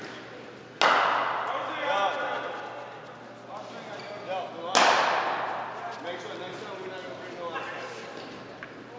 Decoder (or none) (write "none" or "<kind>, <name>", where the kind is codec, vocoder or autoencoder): none